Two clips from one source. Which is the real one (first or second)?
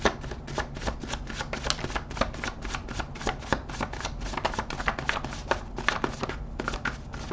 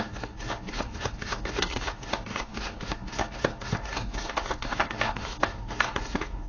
first